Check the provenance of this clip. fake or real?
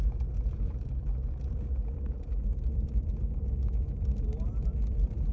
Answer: fake